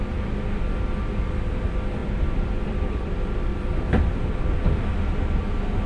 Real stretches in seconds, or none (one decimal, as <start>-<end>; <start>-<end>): 0.0-2.0; 3.1-3.5; 4.2-5.9